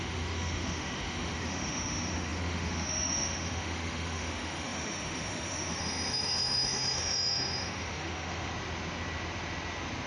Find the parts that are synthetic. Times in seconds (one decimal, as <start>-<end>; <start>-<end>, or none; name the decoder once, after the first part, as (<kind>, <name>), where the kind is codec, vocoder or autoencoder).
0.0-8.5 (autoencoder, DAC-VAE)